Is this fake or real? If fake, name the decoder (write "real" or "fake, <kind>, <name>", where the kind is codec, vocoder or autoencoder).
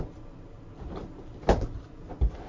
real